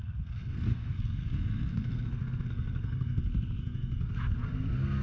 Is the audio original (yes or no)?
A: no